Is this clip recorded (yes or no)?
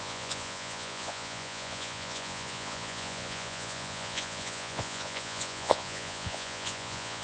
no